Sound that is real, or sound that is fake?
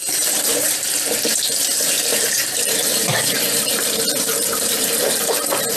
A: fake